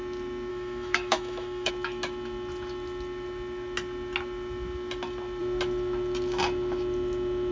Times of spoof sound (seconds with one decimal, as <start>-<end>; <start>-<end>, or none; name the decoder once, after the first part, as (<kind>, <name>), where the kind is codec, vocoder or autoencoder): 0.5-1.7 (autoencoder, DAC-VAE)